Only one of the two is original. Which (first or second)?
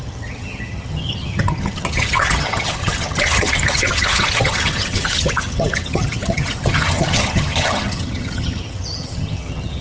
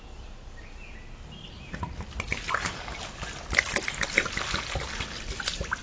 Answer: second